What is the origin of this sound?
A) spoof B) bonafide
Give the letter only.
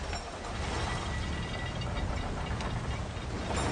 B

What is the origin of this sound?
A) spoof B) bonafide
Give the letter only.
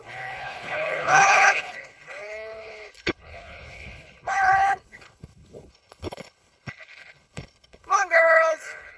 A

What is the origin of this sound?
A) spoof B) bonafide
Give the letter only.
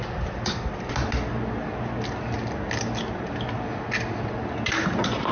B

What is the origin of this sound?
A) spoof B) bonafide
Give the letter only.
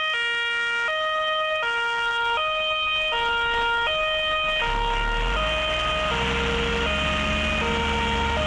B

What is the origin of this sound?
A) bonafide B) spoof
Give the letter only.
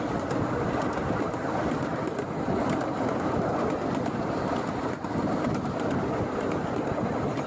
A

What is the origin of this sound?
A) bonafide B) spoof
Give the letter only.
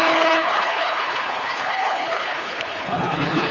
B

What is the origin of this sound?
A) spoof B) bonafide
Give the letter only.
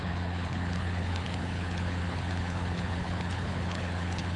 A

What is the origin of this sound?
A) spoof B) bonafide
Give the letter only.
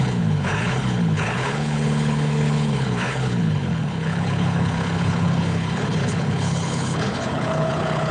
A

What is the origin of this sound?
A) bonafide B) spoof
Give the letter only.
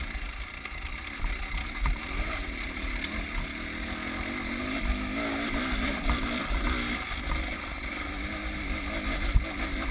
A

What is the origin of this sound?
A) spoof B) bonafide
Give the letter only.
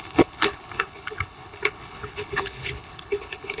A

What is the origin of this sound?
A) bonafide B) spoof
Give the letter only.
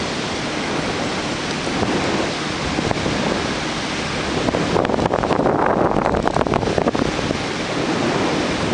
A